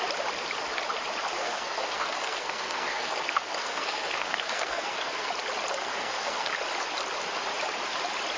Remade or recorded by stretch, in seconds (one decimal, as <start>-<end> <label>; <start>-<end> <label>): 0.0-1.4 recorded; 1.4-5.3 remade; 5.3-5.8 recorded; 5.8-6.5 remade; 6.5-8.4 recorded